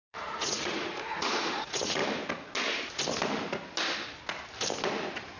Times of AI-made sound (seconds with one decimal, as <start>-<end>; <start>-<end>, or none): 0.0-2.0